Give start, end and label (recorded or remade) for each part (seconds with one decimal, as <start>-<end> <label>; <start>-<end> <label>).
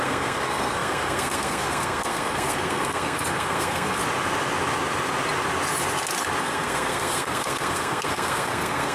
0.0-4.0 remade; 4.0-6.4 recorded; 6.4-8.9 remade